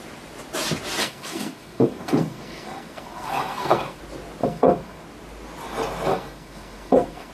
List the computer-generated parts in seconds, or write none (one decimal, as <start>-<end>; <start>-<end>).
1.0-4.0; 4.4-5.0; 6.1-7.3